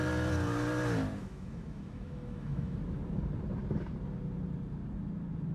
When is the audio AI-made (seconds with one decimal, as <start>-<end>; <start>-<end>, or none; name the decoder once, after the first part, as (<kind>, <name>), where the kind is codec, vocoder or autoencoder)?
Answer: 1.2-2.8 (autoencoder, DAC-VAE)